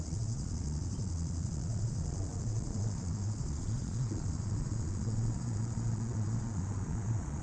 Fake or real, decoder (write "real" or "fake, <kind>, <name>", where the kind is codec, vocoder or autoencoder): fake, vocoder, Vocos